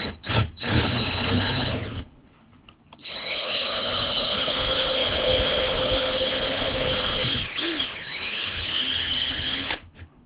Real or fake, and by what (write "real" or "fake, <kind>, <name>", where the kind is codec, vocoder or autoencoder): fake, codec, HILCodec